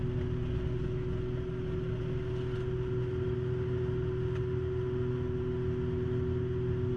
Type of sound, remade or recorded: recorded